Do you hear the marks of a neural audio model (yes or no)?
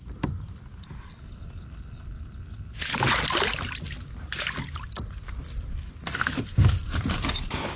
no